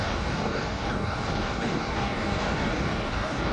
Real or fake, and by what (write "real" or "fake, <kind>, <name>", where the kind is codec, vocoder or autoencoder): fake, codec, DAC